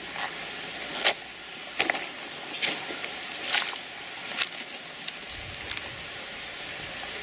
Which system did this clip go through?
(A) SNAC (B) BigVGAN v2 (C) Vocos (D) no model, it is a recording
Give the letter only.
D